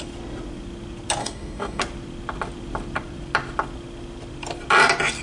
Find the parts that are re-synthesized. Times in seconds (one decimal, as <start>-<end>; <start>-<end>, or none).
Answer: 1.2-1.8